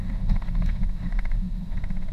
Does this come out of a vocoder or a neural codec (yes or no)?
yes